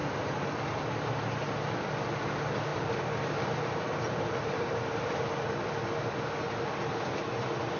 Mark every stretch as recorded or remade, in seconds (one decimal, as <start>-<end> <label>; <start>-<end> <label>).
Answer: 0.0-1.0 remade; 1.0-2.7 recorded; 2.7-5.8 remade; 5.8-7.8 recorded